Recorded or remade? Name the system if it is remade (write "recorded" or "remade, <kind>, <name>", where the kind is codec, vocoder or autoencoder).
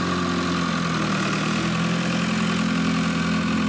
recorded